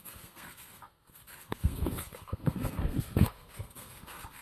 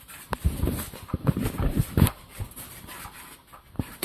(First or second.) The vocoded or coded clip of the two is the first